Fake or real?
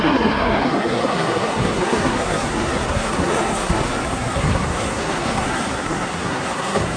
fake